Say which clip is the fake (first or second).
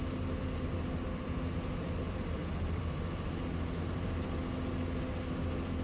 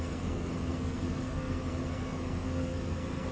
second